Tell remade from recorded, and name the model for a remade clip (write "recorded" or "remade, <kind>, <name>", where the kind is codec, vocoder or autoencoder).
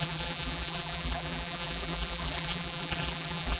remade, vocoder, BigVGAN v2